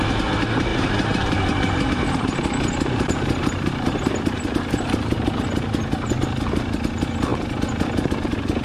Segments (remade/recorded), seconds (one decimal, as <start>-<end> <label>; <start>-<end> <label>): 0.0-0.7 recorded; 0.7-5.4 remade; 5.4-8.6 recorded